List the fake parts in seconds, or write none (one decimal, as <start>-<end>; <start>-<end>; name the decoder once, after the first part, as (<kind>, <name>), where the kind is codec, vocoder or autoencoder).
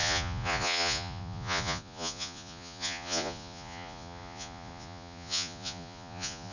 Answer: 0.0-6.5 (vocoder, Vocos)